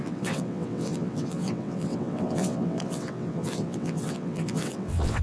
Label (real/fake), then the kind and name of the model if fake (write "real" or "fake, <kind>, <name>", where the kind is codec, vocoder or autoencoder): fake, vocoder, WaveNeXt